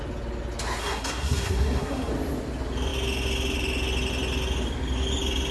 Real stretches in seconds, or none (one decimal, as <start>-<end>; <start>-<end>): 0.0-0.8; 2.1-5.5